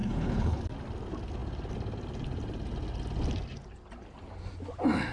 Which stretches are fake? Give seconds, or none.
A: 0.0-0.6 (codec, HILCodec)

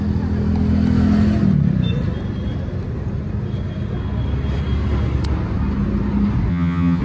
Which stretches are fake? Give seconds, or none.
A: 6.5-7.0 (vocoder, HiFi-GAN)

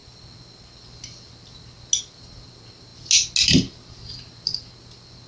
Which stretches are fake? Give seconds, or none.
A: none

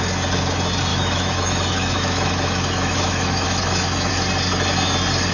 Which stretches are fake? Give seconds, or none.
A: 0.9-4.1 (autoencoder, DAC-VAE)

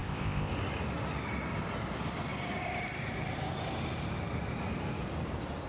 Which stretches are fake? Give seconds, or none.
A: 0.0-0.5 (codec, ZipCodec)

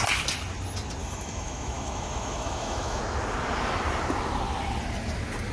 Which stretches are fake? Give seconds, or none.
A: 1.0-3.0 (autoencoder, DAC-VAE)

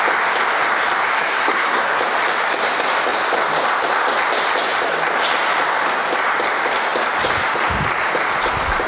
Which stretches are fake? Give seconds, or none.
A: 1.1-1.9 (codec, SNAC)

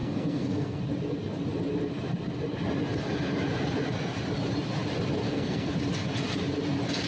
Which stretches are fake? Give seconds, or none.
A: 0.0-0.8 (codec, SNAC); 5.2-5.7